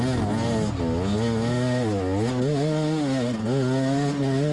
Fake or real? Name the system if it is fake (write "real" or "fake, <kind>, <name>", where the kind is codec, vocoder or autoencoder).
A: real